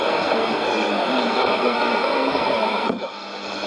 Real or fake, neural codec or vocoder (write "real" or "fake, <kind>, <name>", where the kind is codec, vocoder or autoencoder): fake, codec, SNAC